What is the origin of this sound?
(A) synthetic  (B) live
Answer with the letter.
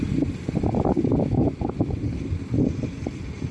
B